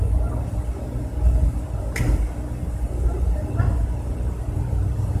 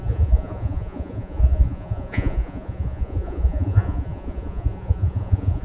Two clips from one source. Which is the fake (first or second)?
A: second